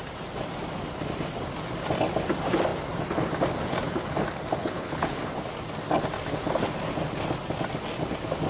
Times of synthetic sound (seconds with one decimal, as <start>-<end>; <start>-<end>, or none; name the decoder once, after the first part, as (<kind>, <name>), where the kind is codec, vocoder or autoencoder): 4.6-5.2 (codec, HILCodec)